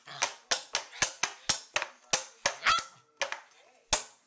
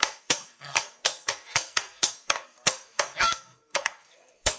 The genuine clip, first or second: first